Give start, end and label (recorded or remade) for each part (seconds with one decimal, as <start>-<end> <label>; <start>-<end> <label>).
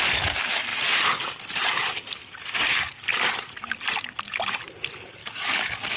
0.0-5.2 recorded; 5.2-6.0 remade